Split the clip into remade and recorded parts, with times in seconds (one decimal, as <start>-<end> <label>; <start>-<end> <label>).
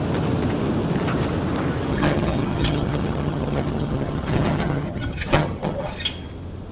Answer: 0.0-1.9 recorded; 1.9-5.9 remade; 5.9-6.7 recorded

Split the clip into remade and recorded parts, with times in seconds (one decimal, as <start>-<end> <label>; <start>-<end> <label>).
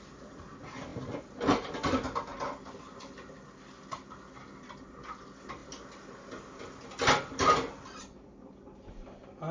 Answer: 0.0-9.5 recorded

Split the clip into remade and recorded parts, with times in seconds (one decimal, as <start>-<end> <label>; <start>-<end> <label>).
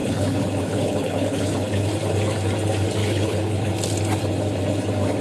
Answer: 0.0-1.9 remade; 1.9-3.0 recorded; 3.0-3.7 remade; 3.7-5.2 recorded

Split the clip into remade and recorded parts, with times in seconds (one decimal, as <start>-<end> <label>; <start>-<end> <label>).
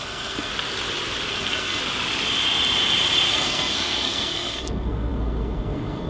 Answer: 0.0-0.5 remade; 0.5-1.3 recorded; 1.3-1.8 remade; 1.8-3.3 recorded; 3.3-6.1 remade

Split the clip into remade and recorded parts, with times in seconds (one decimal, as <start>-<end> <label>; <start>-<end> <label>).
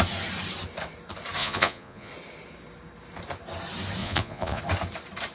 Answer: 0.0-1.4 recorded; 1.4-2.1 remade; 2.1-4.0 recorded; 4.0-4.6 remade; 4.6-5.3 recorded